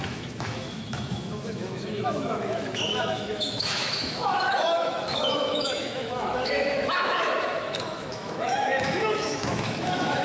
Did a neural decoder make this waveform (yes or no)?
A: yes